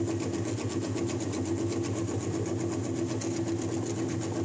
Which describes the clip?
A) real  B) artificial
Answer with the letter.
A